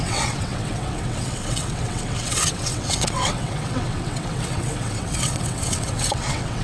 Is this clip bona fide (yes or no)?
no